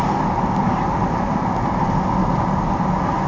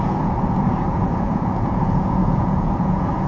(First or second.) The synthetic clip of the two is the second